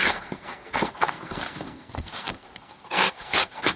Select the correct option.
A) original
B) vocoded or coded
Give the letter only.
B